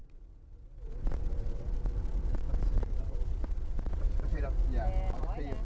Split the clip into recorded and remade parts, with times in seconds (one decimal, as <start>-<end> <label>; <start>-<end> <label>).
0.0-1.8 remade; 1.8-2.3 recorded; 2.3-4.4 remade; 4.4-5.6 recorded